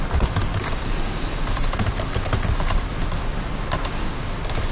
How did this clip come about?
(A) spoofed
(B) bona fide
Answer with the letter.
B